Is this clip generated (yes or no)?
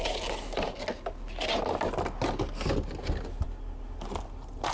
no